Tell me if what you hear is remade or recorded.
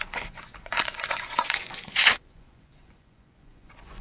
remade